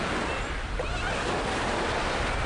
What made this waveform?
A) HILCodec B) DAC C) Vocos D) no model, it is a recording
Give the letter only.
D